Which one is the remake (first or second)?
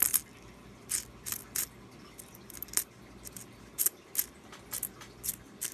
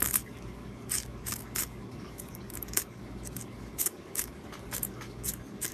second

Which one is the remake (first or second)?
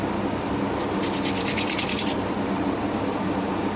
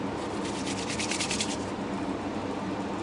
second